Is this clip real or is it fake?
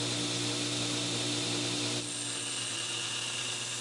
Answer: real